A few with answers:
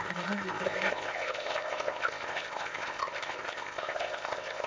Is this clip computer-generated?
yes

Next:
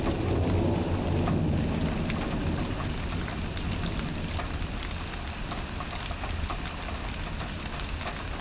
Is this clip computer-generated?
no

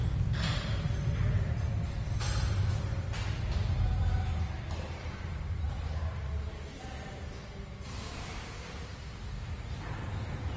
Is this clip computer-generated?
no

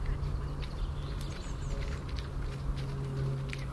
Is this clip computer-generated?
no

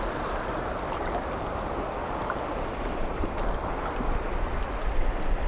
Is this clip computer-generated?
no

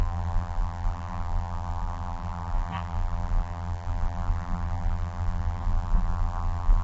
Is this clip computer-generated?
yes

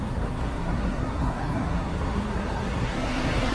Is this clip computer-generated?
yes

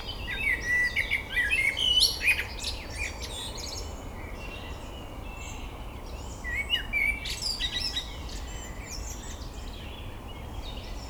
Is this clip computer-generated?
no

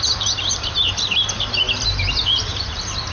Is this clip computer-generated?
yes